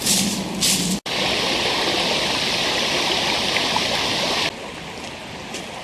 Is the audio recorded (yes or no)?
yes